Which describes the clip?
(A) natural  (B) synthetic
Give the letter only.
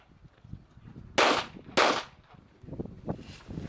A